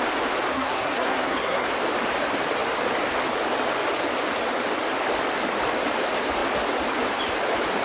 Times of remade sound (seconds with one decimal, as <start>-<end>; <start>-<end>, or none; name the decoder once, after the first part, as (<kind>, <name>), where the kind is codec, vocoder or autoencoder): 0.5-1.7 (codec, SNAC)